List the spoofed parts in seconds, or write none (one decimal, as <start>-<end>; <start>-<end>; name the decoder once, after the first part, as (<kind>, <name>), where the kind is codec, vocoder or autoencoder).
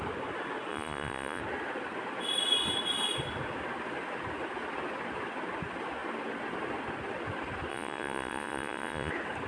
0.7-1.4 (vocoder, Vocos); 7.7-9.1